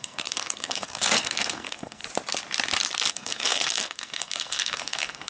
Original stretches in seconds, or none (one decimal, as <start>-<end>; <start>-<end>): 2.0-3.1